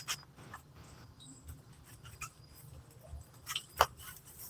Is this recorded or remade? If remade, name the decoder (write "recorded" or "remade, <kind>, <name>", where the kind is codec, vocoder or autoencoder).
remade, vocoder, BigVGAN v2